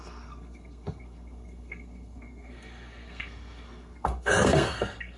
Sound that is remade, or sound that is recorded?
remade